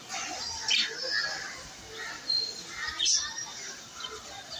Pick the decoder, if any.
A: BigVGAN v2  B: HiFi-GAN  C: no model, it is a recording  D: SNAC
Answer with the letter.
C